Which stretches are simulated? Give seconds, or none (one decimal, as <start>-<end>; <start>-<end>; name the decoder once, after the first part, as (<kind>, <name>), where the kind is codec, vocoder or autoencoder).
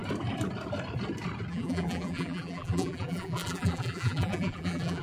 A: 1.5-5.0 (vocoder, BigVGAN v2)